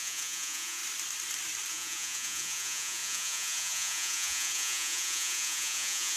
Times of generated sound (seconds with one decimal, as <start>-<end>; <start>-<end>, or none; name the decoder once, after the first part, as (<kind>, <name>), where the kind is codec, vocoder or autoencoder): 0.0-0.8 (vocoder, Vocos); 1.7-6.2